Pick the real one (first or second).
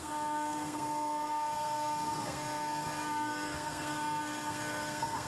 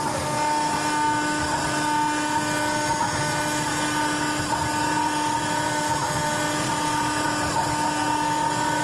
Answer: second